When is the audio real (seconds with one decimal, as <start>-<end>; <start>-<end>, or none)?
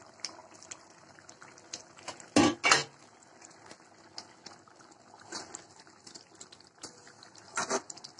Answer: 0.0-8.2